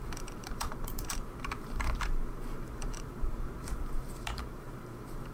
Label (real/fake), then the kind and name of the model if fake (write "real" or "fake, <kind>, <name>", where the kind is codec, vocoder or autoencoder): fake, vocoder, BigVGAN v2